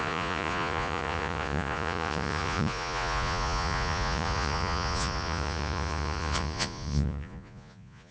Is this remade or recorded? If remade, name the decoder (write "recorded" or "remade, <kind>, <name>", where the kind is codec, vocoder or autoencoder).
remade, vocoder, Vocos